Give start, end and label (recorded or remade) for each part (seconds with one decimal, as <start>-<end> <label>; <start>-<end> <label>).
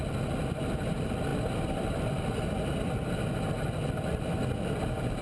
0.0-5.2 recorded